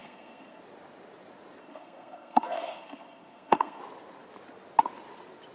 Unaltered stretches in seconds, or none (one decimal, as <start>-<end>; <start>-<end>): 0.6-1.6; 3.8-5.5